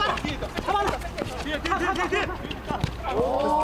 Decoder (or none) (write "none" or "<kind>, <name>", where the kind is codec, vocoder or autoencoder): none